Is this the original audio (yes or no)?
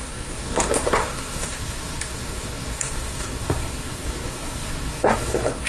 no